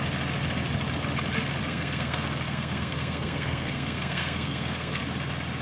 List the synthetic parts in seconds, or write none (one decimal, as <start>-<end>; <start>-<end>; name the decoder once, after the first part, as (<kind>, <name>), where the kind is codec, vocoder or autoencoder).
1.6-5.0 (codec, SNAC)